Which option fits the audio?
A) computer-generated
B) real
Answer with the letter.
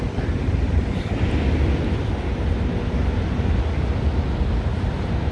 B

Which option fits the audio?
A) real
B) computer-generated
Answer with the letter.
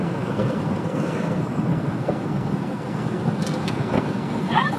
B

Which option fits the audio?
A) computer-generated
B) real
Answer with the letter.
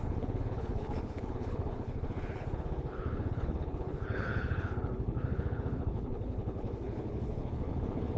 A